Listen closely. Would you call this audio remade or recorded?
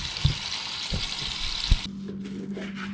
recorded